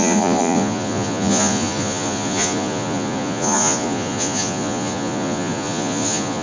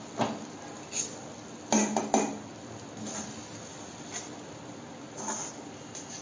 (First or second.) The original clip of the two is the second